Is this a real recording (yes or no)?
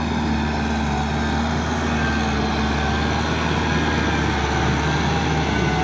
yes